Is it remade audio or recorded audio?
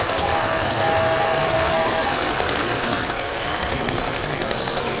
remade